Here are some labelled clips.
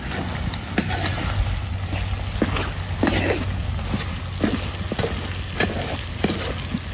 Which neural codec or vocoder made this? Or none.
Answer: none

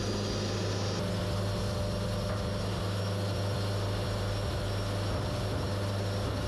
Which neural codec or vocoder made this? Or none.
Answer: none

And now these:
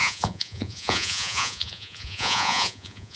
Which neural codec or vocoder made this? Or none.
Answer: vocoder, Vocos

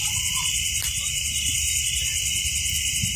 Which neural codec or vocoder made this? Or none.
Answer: none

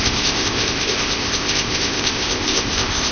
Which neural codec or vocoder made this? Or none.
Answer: codec, ZipCodec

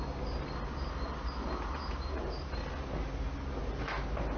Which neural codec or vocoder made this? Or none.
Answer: none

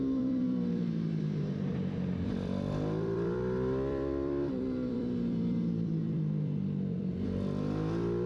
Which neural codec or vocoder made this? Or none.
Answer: vocoder, BigVGAN v2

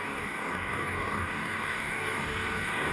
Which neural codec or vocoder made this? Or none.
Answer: codec, DAC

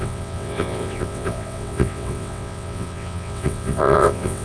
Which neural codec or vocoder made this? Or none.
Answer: vocoder, WaveNeXt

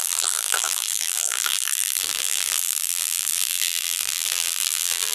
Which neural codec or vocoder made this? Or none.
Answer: vocoder, BigVGAN v2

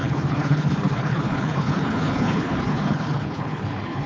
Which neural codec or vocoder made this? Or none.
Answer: codec, HILCodec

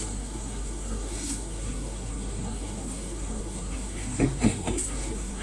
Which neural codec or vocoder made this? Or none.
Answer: codec, SNAC